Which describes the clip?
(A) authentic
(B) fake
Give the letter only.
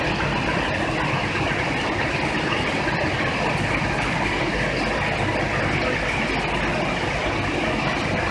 A